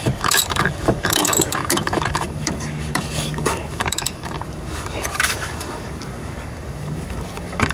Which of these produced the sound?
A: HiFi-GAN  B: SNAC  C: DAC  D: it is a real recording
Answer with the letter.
C